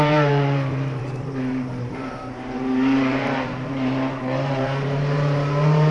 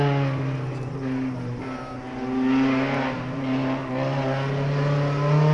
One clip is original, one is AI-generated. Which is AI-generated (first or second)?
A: first